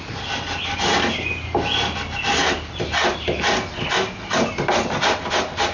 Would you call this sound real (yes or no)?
yes